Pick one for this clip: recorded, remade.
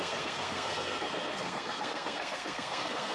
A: remade